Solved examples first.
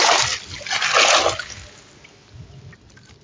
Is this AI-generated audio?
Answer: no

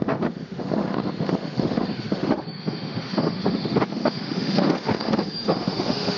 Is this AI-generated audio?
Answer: yes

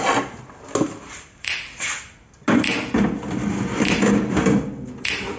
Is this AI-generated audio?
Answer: no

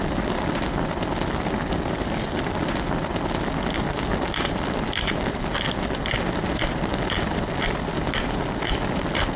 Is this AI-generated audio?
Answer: no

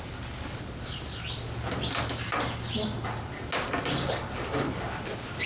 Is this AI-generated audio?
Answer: no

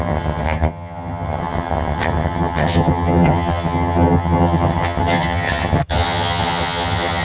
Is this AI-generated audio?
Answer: yes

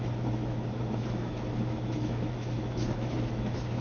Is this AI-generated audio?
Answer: yes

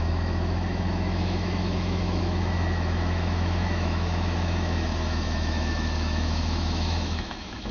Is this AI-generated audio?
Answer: yes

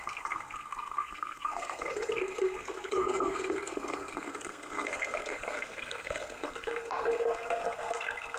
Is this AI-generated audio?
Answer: yes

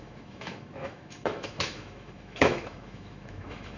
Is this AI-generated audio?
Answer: yes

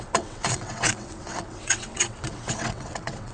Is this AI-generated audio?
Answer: yes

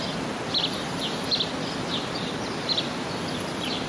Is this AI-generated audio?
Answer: no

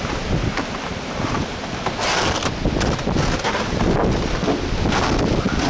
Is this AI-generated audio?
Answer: no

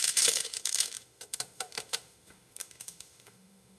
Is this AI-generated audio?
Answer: yes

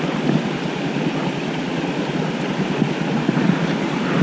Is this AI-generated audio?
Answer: no